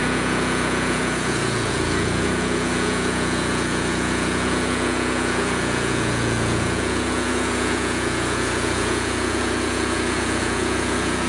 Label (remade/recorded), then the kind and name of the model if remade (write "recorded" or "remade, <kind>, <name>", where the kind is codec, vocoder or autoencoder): remade, vocoder, Vocos